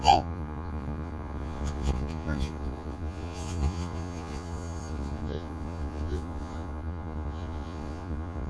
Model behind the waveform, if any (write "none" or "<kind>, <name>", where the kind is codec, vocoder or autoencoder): vocoder, Vocos